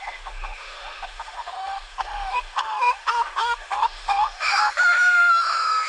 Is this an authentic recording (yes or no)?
no